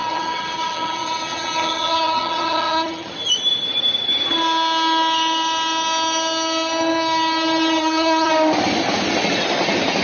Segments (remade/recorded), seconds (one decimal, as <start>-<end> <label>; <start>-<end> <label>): 0.0-3.1 remade; 3.1-7.8 recorded; 7.8-8.3 remade; 8.3-10.0 recorded